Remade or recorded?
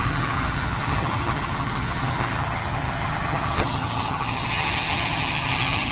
remade